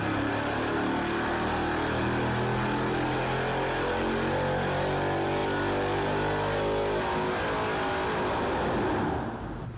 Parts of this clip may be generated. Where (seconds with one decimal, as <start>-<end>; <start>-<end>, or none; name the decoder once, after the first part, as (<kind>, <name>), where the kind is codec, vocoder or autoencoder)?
none